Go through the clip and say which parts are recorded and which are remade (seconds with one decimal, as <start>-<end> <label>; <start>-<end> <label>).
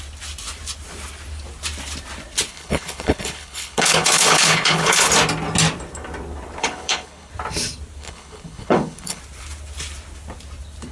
0.0-2.5 recorded; 2.5-5.1 remade; 5.1-6.6 recorded; 6.6-7.3 remade; 7.3-8.0 recorded; 8.0-9.2 remade; 9.2-10.9 recorded